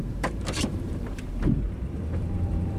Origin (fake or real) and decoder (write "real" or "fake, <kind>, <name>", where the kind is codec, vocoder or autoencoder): fake, vocoder, BigVGAN v2